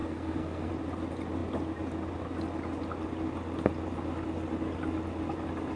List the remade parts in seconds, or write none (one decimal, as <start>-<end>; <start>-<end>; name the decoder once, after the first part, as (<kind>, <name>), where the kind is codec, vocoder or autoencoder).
0.0-0.7 (codec, SNAC)